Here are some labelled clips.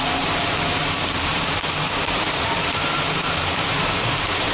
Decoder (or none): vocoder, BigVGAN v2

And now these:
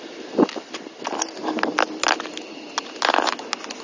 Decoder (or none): none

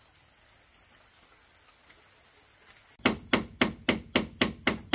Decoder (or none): none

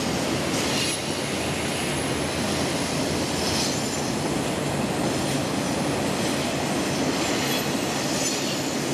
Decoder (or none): none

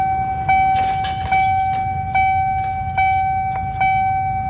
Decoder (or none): none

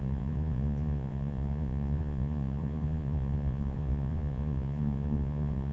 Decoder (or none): vocoder, Vocos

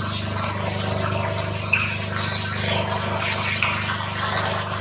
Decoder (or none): none